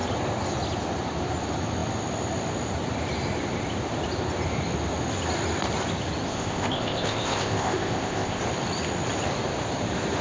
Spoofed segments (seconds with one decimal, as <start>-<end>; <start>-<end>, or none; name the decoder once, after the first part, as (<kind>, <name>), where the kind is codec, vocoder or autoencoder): 6.3-8.4 (codec, ZipCodec)